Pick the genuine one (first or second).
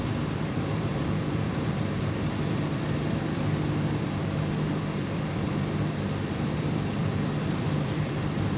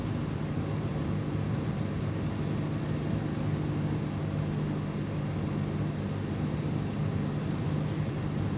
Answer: second